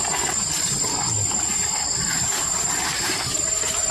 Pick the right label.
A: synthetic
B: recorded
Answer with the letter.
A